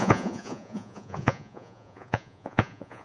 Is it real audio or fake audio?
fake